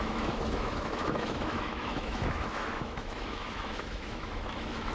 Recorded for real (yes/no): no